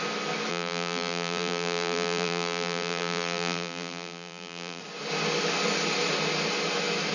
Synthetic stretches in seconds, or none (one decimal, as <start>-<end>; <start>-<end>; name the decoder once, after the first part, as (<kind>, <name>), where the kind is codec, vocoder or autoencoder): 0.5-4.8 (vocoder, BigVGAN v2)